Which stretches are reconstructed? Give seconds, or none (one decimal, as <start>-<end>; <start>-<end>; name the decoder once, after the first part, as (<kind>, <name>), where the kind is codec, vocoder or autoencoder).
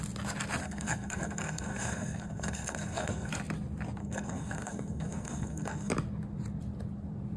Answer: 0.6-3.3 (codec, SNAC); 4.0-5.9